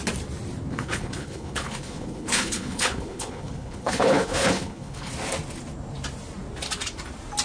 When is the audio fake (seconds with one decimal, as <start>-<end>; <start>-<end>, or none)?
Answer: 0.7-5.1